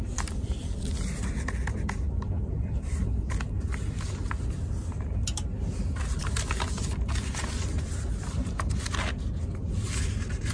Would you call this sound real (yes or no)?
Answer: yes